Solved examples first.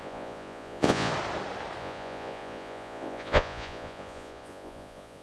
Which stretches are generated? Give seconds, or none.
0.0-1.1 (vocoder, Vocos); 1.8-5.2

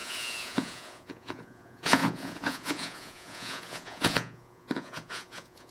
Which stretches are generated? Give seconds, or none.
0.0-5.7 (vocoder, Vocos)

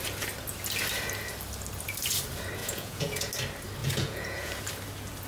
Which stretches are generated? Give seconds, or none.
2.6-3.3 (vocoder, Vocos); 3.8-4.5

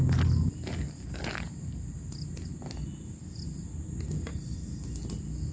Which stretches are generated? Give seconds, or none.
none